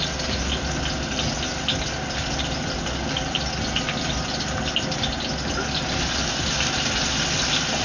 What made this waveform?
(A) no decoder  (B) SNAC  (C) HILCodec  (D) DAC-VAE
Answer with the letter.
A